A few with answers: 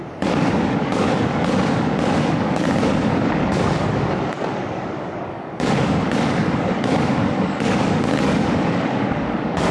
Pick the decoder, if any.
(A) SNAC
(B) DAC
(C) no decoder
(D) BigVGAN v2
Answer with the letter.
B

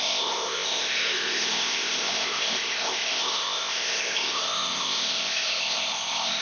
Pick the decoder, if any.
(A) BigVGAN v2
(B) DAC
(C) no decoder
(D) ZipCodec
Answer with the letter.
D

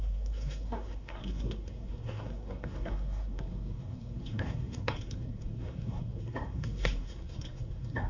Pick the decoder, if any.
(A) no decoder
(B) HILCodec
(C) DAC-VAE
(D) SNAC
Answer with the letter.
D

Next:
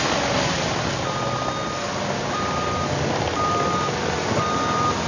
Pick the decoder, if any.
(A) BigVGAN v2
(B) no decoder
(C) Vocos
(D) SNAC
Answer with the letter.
B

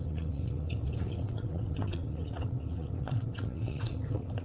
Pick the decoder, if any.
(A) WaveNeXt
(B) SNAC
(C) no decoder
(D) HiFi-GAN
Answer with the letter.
A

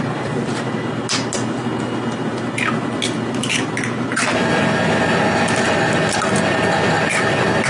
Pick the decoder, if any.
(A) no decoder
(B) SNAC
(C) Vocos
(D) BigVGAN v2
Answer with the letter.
A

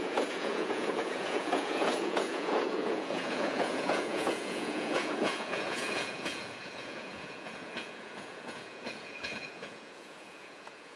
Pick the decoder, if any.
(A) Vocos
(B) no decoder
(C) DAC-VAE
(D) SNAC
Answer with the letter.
A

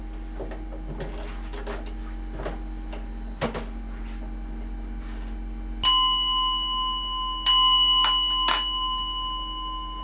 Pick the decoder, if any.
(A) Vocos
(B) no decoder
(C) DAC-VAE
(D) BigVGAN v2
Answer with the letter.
B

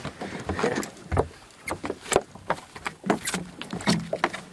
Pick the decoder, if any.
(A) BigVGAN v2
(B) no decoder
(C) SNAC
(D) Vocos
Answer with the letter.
B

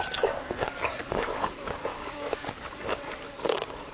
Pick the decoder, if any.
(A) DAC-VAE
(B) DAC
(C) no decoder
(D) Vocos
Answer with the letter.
B